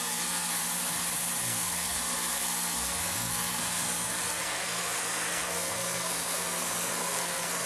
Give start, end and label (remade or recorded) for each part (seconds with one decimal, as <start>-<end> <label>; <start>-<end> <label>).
0.0-0.6 remade; 0.6-1.4 recorded; 1.4-7.7 remade